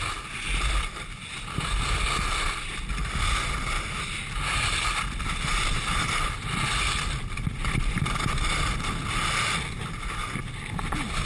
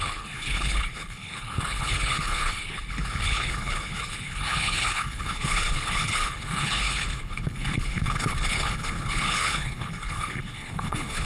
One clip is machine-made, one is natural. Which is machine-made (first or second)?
second